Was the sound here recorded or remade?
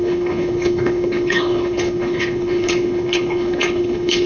remade